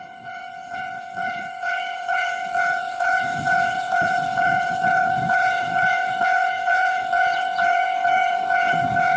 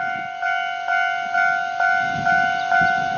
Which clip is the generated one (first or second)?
first